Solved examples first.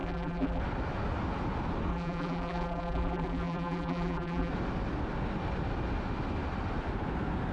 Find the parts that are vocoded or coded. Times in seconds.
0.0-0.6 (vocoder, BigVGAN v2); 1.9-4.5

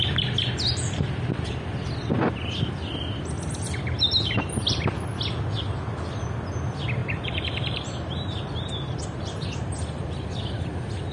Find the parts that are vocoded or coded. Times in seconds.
7.0-9.2 (vocoder, BigVGAN v2)

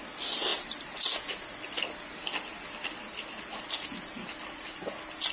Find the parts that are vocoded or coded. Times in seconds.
none

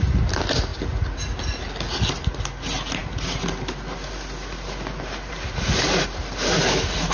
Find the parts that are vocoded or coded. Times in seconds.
none

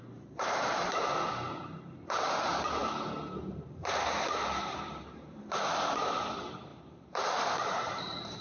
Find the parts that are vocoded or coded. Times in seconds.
0.0-2.8 (vocoder, BigVGAN v2); 3.4-8.4

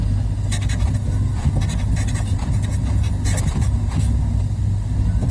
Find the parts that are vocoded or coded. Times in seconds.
none

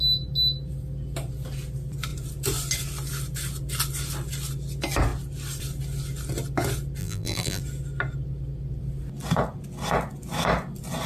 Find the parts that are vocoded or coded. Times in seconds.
7.0-7.6 (vocoder, BigVGAN v2)

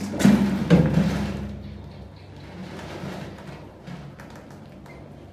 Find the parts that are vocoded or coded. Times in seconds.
2.6-3.4 (vocoder, BigVGAN v2)